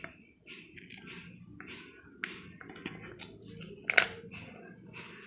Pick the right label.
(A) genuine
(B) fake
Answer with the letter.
A